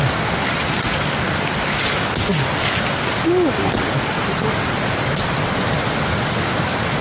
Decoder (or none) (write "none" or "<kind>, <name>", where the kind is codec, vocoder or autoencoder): none